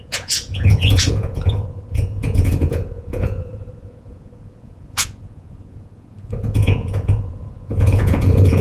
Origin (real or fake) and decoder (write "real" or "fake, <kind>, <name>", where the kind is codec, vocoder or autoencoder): fake, vocoder, Vocos